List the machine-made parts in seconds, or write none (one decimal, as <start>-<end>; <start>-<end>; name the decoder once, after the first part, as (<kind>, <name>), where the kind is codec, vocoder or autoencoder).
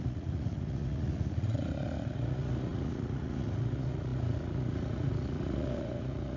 0.0-6.4 (vocoder, Vocos)